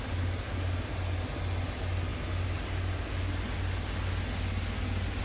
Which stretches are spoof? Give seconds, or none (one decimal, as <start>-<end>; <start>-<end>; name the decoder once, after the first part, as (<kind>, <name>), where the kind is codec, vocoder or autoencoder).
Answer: none